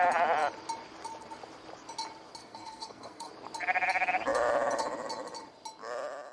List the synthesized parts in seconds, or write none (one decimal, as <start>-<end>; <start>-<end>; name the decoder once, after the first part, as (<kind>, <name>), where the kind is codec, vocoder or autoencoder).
2.4-3.3 (codec, SNAC)